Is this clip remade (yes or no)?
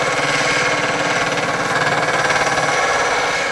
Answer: no